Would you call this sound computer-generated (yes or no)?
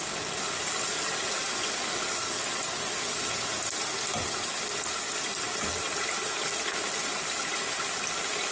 no